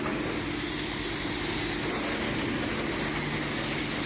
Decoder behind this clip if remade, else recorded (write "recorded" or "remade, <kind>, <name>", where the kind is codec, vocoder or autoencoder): recorded